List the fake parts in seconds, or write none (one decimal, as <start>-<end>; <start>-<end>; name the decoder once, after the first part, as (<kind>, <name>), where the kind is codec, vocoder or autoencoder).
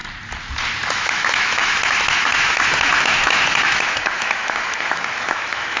0.9-5.8 (autoencoder, DAC-VAE)